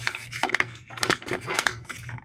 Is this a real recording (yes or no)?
no